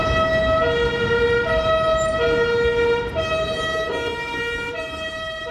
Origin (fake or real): real